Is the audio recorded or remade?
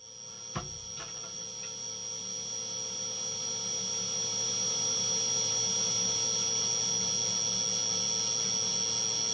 recorded